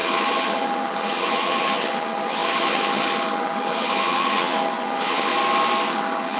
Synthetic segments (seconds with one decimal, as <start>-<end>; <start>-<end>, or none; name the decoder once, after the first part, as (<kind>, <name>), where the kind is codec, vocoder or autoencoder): 0.0-5.3 (vocoder, HiFi-GAN); 5.9-6.4